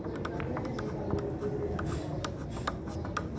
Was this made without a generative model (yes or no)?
yes